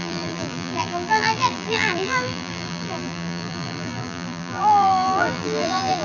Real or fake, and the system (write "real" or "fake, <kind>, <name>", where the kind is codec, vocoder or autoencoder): fake, vocoder, BigVGAN v2